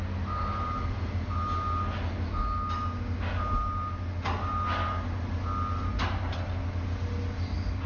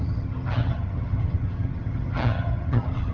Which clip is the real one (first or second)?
first